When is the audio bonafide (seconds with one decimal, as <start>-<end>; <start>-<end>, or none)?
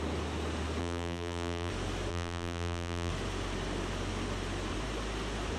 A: 0.0-0.8; 1.7-2.1; 3.1-5.6